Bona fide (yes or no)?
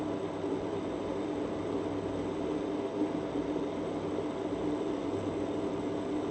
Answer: yes